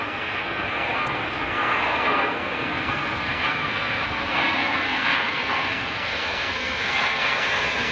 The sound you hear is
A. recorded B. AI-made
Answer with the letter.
B